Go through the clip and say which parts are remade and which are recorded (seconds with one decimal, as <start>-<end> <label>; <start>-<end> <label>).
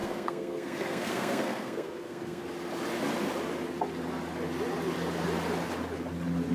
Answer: 0.0-2.4 remade; 2.4-6.5 recorded